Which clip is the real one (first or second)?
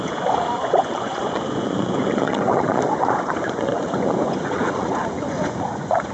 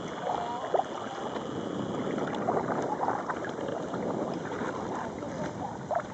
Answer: second